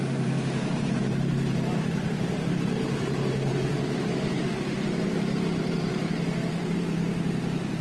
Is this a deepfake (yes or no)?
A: yes